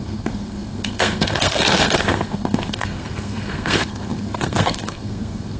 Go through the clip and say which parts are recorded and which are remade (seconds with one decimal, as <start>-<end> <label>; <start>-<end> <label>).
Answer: 0.0-5.6 remade